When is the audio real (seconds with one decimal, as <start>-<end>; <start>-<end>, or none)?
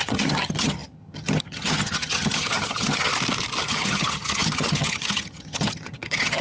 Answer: 3.1-3.6